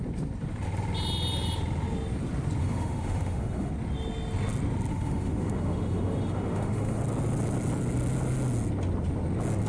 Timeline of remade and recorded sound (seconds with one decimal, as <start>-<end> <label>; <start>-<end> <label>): 0.0-2.6 recorded; 2.6-3.7 remade; 3.7-4.9 recorded; 4.9-7.0 remade; 7.0-9.7 recorded